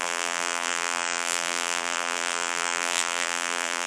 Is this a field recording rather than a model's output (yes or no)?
no